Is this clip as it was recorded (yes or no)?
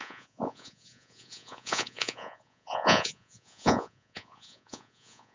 no